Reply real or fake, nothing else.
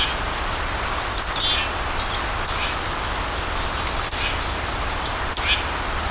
real